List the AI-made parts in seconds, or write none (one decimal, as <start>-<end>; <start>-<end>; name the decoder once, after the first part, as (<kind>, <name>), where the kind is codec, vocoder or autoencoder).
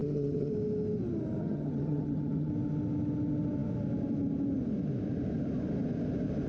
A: 0.0-0.5 (vocoder, HiFi-GAN); 1.4-2.5